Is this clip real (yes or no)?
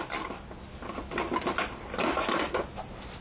yes